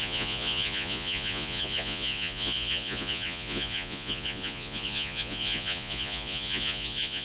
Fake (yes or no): yes